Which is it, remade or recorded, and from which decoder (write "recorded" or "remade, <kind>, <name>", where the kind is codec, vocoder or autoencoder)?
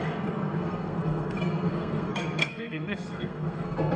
remade, codec, SNAC